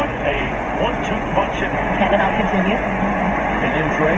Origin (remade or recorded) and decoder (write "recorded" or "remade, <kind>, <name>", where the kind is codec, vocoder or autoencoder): remade, vocoder, Vocos